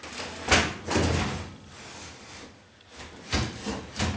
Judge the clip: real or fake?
real